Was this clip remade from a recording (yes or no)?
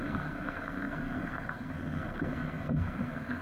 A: yes